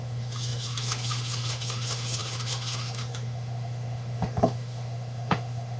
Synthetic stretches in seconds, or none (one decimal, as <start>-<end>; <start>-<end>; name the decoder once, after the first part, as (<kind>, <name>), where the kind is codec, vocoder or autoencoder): 0.0-5.8 (autoencoder, DAC-VAE)